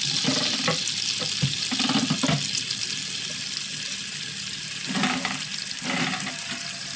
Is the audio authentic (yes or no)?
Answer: yes